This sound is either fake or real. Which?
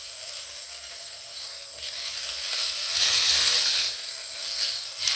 fake